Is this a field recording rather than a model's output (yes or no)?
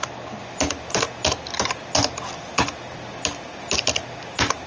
yes